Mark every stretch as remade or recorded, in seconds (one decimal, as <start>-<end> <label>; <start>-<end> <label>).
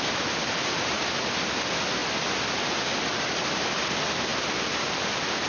0.0-0.4 recorded; 0.4-1.0 remade; 1.0-5.5 recorded